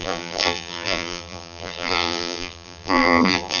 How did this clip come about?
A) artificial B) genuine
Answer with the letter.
A